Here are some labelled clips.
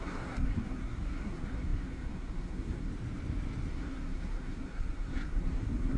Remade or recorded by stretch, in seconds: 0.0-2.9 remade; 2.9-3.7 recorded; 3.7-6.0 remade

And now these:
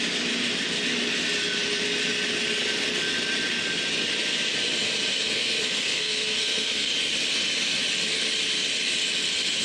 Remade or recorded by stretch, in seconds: 0.0-5.1 recorded; 5.1-6.9 remade; 6.9-9.6 recorded